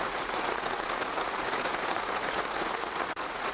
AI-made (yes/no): yes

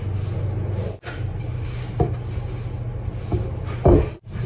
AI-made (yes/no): no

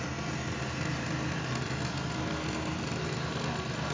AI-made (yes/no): no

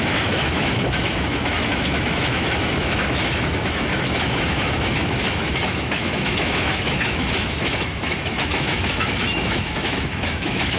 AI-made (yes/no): yes